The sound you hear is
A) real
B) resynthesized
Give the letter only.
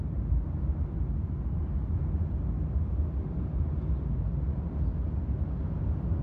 A